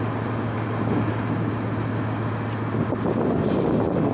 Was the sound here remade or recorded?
recorded